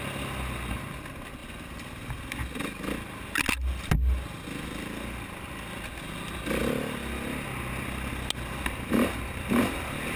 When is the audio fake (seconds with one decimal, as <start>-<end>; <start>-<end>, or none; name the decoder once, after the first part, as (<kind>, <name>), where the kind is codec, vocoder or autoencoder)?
none